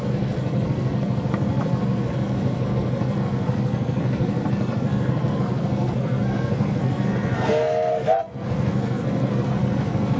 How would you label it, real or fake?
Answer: fake